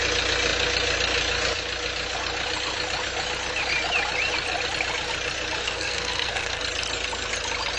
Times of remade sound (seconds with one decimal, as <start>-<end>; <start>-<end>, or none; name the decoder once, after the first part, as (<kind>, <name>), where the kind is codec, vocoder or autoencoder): 5.6-6.6 (codec, SNAC)